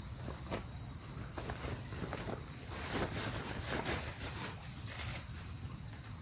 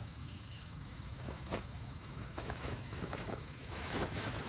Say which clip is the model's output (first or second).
second